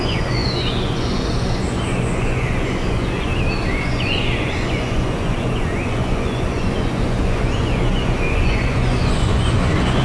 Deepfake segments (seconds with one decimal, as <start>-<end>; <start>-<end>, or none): 0.0-3.3; 3.8-10.0